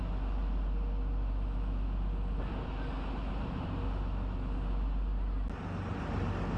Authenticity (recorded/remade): recorded